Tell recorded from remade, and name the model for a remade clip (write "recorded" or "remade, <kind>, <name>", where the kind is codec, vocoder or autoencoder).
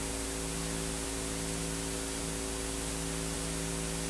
recorded